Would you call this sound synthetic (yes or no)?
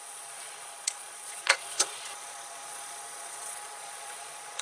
yes